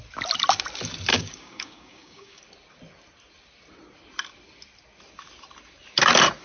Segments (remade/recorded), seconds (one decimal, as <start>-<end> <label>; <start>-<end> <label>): 0.0-1.1 recorded; 1.1-2.4 remade; 2.4-6.4 recorded